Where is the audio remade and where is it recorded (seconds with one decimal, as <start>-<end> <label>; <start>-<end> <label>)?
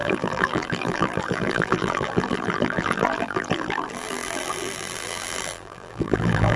0.0-6.6 remade